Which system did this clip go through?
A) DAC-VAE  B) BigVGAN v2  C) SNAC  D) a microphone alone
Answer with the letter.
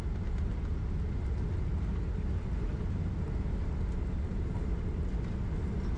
D